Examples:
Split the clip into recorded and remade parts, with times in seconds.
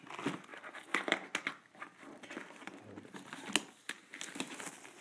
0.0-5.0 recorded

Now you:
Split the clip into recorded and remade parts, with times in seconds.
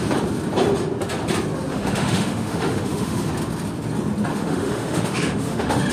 0.0-1.7 recorded; 1.7-3.3 remade; 3.3-4.3 recorded; 4.3-5.9 remade